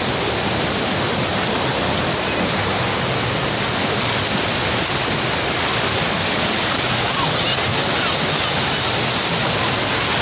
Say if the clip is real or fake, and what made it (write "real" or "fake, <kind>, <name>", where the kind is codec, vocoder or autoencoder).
real